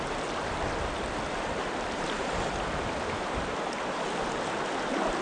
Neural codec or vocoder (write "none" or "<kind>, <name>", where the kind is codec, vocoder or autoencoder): none